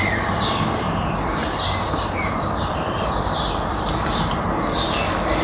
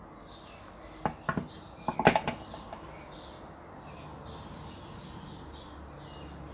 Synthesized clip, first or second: first